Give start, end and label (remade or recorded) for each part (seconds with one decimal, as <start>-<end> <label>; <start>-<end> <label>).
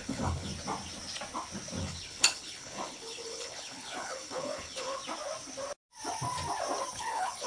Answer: 0.0-0.5 remade; 0.5-1.8 recorded; 1.8-5.0 remade; 5.0-7.0 recorded; 7.0-7.5 remade